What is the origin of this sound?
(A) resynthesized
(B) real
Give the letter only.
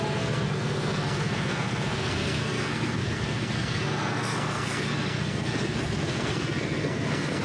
A